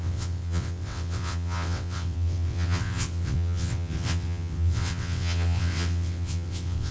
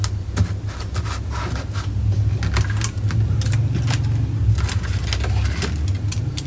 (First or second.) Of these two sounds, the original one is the second